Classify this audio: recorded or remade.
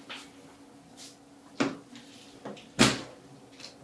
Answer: recorded